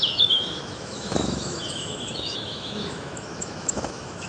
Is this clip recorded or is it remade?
remade